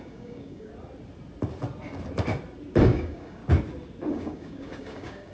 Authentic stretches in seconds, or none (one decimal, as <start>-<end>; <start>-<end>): 0.7-2.8; 3.4-4.1